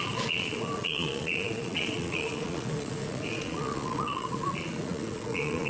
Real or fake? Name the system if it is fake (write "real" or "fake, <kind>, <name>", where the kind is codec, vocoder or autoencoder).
fake, vocoder, Vocos